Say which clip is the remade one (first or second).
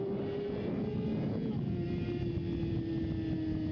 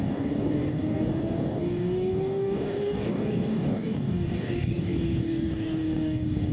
second